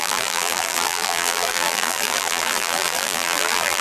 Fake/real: fake